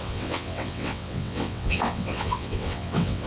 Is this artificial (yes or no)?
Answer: yes